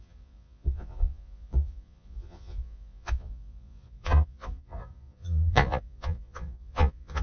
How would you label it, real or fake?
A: fake